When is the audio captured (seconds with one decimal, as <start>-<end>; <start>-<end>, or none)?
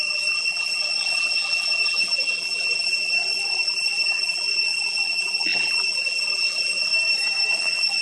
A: 6.9-7.5